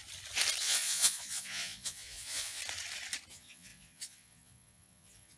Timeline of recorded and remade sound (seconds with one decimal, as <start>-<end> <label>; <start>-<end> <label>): 0.0-0.6 recorded; 0.6-2.6 remade; 2.6-3.3 recorded; 3.3-5.4 remade